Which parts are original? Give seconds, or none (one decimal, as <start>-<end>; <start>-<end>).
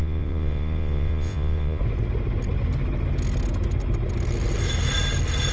1.8-5.5